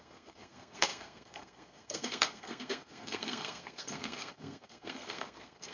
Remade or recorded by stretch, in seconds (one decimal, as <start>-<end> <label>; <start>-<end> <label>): 0.0-5.7 remade